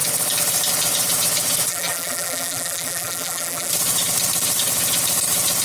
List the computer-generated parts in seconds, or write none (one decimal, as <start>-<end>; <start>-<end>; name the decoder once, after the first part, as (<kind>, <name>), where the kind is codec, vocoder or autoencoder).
1.7-3.7 (vocoder, BigVGAN v2)